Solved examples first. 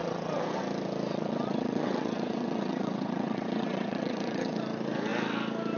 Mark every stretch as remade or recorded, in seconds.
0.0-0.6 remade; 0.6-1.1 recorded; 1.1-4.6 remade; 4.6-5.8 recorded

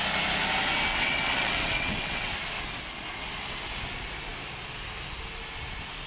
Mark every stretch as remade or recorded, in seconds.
0.0-0.9 recorded; 0.9-2.3 remade; 2.3-6.1 recorded

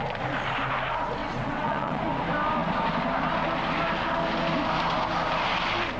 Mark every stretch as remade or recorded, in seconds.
0.0-1.2 recorded; 1.2-2.0 remade; 2.0-6.0 recorded

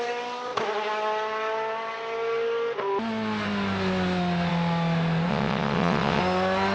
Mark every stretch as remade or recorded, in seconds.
0.0-5.3 recorded; 5.3-6.2 remade; 6.2-6.7 recorded